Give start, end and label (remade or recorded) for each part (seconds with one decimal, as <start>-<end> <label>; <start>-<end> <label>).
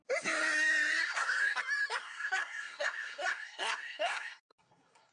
0.0-1.0 recorded; 1.0-1.6 remade; 1.6-2.0 recorded; 2.0-5.1 remade